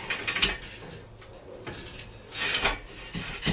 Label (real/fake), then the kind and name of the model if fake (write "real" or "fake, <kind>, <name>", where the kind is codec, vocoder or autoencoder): real